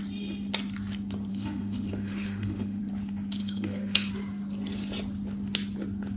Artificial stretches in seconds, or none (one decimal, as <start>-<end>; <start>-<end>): 1.3-2.8; 3.4-4.1